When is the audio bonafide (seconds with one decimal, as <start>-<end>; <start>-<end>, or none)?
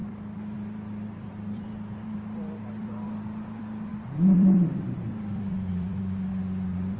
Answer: 6.3-7.0